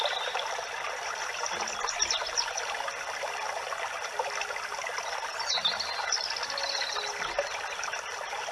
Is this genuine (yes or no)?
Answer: yes